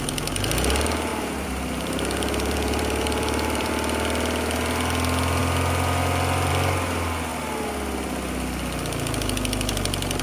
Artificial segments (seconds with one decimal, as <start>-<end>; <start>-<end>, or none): 1.1-3.7